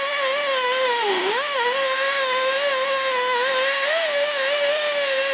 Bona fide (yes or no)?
no